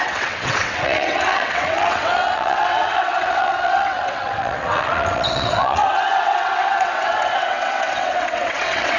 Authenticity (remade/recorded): remade